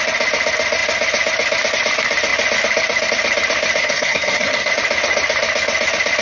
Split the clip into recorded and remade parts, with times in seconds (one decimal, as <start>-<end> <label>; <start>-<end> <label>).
0.0-3.8 recorded; 3.8-4.7 remade; 4.7-6.2 recorded